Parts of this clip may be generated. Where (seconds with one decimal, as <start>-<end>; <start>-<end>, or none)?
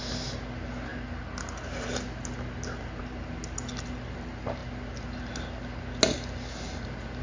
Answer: none